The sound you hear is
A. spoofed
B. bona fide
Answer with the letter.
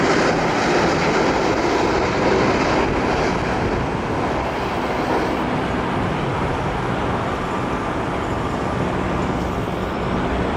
B